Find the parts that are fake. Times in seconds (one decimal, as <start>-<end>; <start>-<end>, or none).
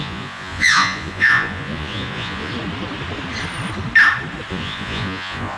0.0-2.5; 4.5-5.6